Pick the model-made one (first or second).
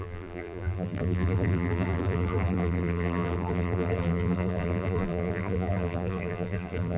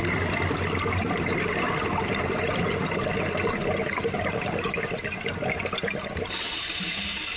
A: first